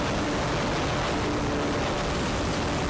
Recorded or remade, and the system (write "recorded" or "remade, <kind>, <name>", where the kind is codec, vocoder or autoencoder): recorded